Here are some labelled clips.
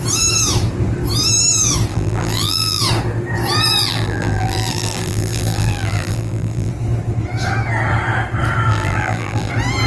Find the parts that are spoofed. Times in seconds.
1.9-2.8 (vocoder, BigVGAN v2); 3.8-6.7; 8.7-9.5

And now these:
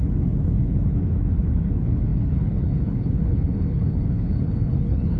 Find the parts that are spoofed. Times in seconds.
0.0-5.2 (codec, HILCodec)

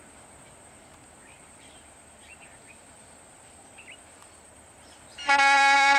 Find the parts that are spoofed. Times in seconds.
4.2-6.0 (vocoder, BigVGAN v2)

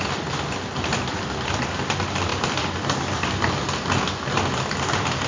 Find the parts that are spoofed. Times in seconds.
none